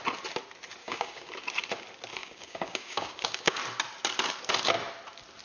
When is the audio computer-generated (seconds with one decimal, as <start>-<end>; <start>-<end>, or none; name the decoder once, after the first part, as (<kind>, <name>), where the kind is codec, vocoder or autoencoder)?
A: 0.8-1.3 (codec, DAC); 2.2-3.6